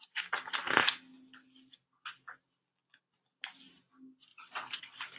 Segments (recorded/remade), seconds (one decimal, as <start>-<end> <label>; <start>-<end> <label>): 0.0-4.3 recorded; 4.3-4.8 remade; 4.8-5.2 recorded